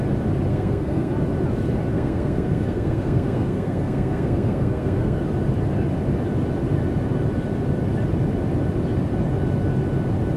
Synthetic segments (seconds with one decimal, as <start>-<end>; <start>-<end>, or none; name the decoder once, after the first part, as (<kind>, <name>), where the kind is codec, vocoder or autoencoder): 0.5-1.1 (codec, SNAC); 1.9-5.2